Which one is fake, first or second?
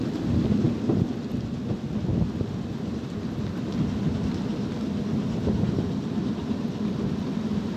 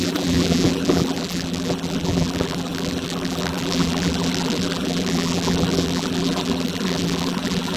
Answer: second